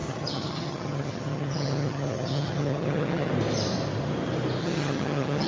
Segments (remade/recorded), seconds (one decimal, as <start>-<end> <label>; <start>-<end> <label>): 0.0-3.3 remade; 3.3-4.6 recorded; 4.6-5.5 remade